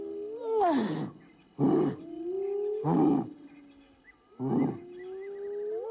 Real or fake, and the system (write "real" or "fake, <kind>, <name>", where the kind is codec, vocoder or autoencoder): real